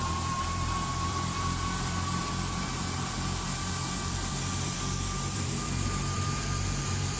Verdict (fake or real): fake